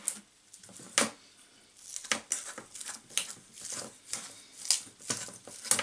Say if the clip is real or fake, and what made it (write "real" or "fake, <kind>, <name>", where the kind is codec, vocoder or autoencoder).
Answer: real